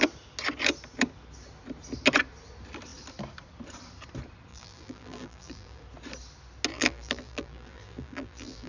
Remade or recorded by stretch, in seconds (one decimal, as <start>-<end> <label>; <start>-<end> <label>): 0.0-4.5 recorded; 4.5-5.8 remade; 5.8-6.7 recorded; 6.7-8.7 remade